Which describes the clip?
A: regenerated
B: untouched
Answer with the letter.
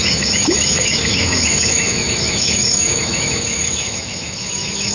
A